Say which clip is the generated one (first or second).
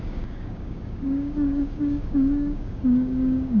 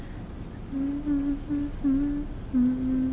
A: first